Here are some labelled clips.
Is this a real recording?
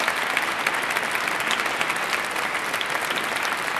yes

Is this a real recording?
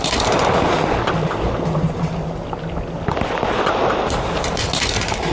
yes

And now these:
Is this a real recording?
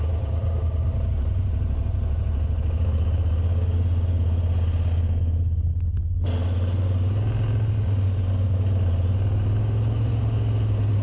yes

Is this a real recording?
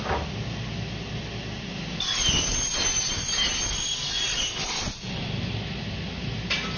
yes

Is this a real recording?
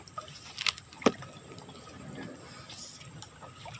yes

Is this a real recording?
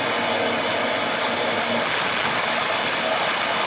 yes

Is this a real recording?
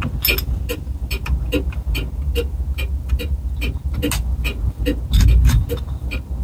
yes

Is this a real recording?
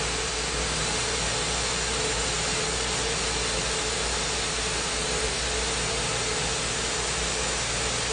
yes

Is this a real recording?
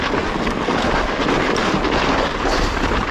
yes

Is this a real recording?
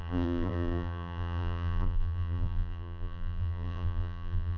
no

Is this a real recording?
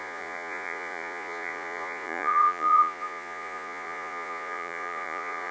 no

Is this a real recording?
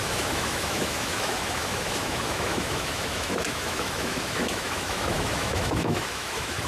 no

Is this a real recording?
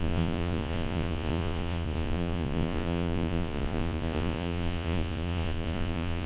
no